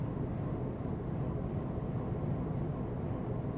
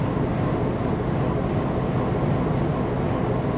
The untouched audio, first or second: second